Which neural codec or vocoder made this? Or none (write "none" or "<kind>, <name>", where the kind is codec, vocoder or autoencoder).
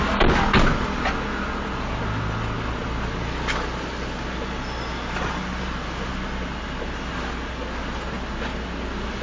none